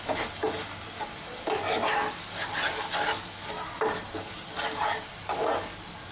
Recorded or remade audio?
recorded